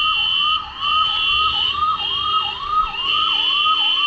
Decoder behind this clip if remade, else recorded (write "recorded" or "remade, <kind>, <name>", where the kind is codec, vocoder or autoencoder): recorded